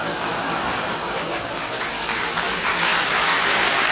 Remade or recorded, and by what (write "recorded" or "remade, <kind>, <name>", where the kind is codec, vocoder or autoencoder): remade, codec, DAC